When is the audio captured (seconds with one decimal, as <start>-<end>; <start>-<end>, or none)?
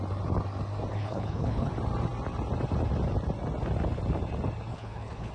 0.0-0.9; 1.7-4.7